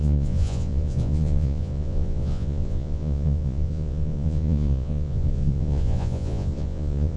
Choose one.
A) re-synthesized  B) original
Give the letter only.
A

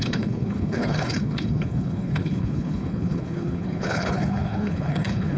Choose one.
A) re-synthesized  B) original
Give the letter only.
A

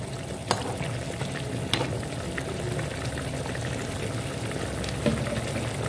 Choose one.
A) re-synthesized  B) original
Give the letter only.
B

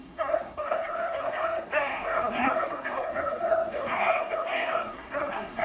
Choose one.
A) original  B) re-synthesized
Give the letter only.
B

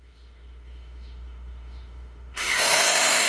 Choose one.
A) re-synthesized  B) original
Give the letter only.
A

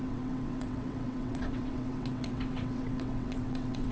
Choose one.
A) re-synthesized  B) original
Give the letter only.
A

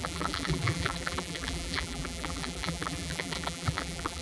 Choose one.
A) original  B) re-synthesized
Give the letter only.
B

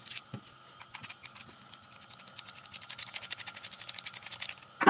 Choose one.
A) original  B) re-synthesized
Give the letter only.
A